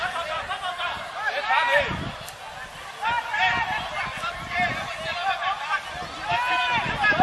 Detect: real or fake real